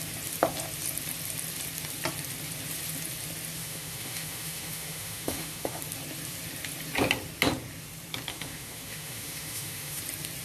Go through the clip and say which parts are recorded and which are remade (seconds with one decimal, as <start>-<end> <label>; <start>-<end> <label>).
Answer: 0.0-3.6 recorded; 3.6-5.8 remade; 5.8-8.3 recorded; 8.3-10.0 remade; 10.0-10.4 recorded